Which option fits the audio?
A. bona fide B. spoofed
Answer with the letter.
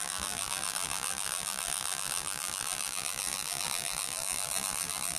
B